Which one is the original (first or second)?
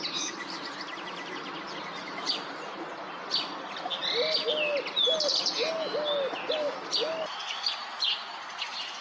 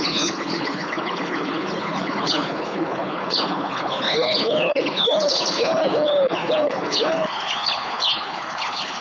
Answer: first